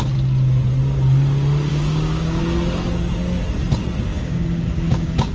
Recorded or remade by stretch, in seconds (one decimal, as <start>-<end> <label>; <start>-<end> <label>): 0.0-1.7 recorded; 1.7-2.4 remade; 2.4-4.1 recorded; 4.1-5.3 remade